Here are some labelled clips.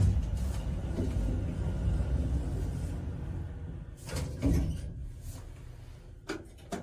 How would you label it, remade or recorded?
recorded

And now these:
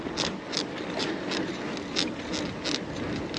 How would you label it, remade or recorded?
recorded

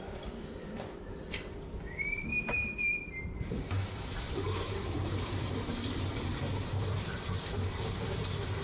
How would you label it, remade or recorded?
remade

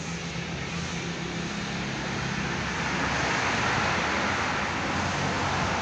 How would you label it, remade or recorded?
recorded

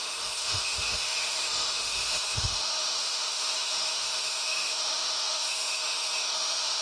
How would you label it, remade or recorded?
remade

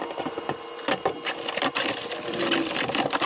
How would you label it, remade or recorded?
recorded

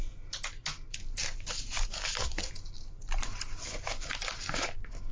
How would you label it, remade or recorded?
recorded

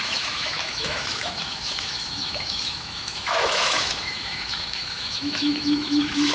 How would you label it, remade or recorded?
remade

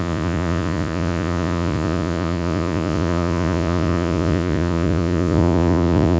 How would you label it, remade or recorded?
remade